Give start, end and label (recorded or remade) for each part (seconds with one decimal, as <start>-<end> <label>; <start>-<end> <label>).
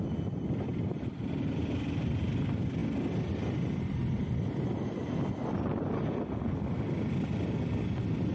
0.0-8.3 recorded